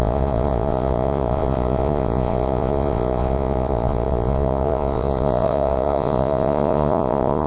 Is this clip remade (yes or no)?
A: yes